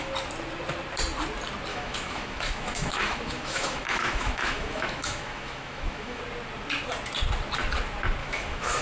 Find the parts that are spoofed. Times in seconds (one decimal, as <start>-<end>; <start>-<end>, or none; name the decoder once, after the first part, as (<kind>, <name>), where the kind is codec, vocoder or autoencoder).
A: 1.7-6.2 (autoencoder, DAC-VAE); 8.2-8.8